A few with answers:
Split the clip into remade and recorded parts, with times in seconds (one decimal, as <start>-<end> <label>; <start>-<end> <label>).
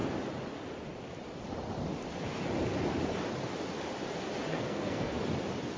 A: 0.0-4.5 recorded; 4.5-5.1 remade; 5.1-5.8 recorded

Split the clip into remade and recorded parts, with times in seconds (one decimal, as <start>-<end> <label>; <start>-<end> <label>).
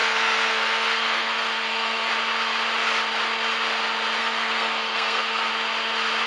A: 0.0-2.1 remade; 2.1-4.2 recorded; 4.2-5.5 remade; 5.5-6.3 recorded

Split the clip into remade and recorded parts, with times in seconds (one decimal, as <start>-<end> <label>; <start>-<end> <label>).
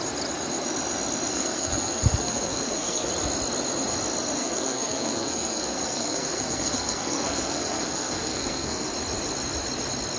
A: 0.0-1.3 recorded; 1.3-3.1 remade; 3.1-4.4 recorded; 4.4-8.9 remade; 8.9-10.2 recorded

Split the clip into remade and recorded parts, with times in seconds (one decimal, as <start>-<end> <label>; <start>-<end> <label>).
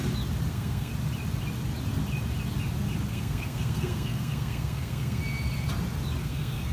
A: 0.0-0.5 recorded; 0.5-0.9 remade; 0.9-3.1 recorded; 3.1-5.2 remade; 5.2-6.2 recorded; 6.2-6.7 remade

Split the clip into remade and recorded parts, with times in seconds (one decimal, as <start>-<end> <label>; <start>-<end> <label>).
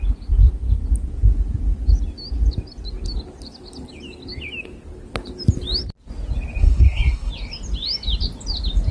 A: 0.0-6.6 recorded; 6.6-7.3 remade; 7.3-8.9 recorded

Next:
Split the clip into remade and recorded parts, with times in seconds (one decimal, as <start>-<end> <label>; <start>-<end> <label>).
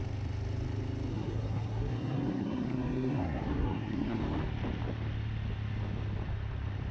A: 0.0-1.1 recorded; 1.1-4.2 remade; 4.2-6.9 recorded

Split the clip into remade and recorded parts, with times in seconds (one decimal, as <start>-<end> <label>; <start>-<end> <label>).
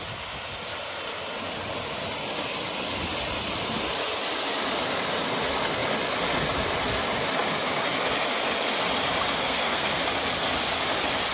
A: 0.0-9.4 recorded; 9.4-10.0 remade; 10.0-11.3 recorded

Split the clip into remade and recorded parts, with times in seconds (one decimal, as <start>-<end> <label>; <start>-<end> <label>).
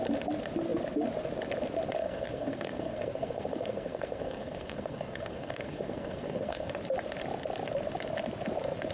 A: 0.0-2.0 recorded; 2.0-6.7 remade; 6.7-8.9 recorded